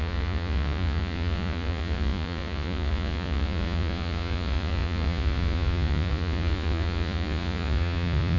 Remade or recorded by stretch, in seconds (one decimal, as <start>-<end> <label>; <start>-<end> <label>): 0.0-8.4 remade